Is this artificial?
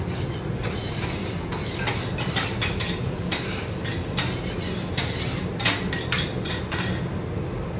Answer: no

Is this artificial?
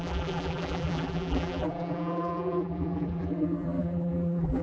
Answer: yes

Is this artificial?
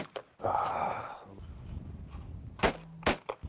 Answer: no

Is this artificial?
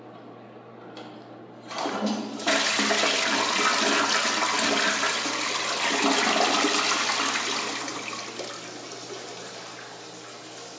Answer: no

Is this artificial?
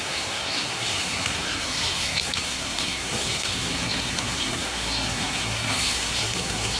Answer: yes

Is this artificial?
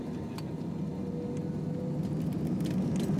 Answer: no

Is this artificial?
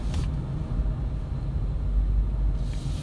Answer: no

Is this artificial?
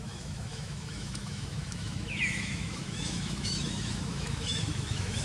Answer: yes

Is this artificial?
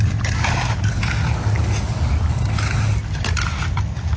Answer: no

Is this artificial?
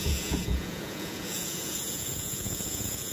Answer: yes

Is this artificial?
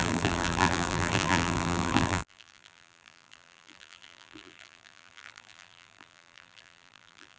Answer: yes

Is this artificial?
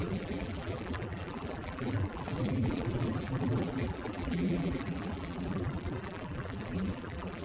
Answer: yes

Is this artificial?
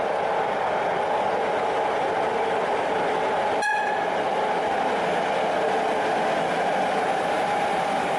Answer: no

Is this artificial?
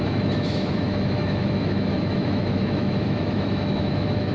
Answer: yes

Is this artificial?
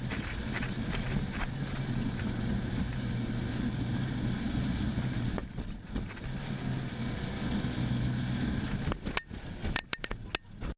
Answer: no